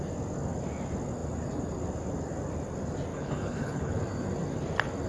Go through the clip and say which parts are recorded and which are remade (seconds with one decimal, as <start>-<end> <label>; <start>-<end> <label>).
0.0-3.1 recorded; 3.1-4.0 remade; 4.0-5.1 recorded